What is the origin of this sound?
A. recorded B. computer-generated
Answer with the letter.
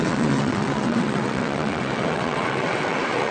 B